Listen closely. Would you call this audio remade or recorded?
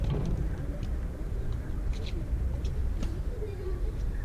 remade